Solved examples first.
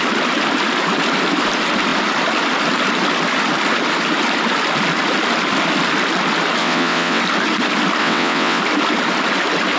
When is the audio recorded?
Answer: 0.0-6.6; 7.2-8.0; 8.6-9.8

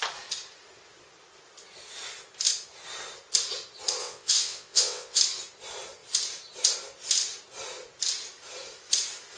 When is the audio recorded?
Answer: 0.0-4.0; 5.2-9.4

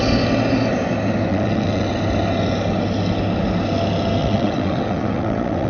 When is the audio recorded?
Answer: 0.0-1.3; 2.0-4.2

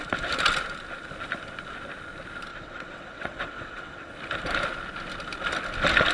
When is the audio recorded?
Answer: 0.0-2.5; 4.1-6.1

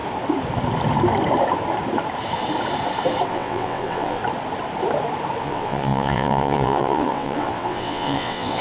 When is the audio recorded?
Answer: 0.0-3.3; 4.2-5.4

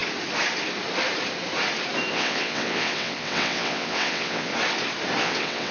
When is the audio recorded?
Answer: 0.0-2.1; 4.5-5.2